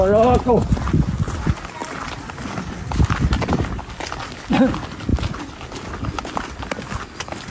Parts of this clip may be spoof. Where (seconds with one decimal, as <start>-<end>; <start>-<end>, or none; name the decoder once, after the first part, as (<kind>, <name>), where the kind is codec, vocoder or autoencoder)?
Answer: 1.8-3.8 (vocoder, BigVGAN v2)